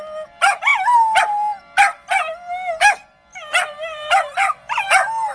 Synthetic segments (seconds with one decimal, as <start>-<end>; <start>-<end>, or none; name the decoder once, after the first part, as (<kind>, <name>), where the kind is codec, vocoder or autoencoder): 3.3-4.8 (vocoder, BigVGAN v2)